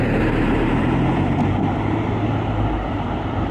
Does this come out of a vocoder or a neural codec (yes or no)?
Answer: yes